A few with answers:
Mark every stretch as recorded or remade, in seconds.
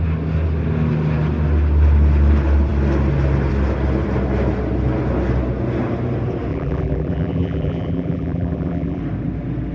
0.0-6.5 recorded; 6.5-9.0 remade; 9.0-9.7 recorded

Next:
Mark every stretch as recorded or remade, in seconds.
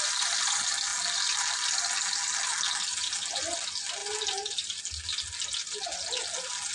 0.0-6.7 recorded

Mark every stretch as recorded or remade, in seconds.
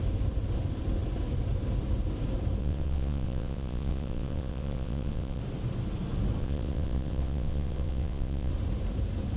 0.0-2.6 recorded; 2.6-5.4 remade; 5.4-6.4 recorded; 6.4-8.5 remade; 8.5-9.4 recorded